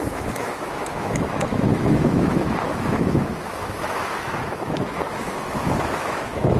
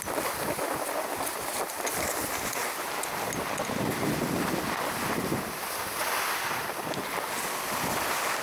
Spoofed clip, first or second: first